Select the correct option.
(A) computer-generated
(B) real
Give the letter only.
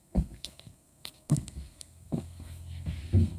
A